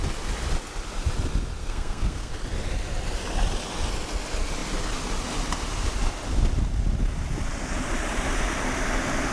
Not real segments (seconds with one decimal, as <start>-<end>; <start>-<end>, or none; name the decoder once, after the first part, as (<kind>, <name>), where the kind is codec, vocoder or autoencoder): 1.6-2.3 (codec, SNAC)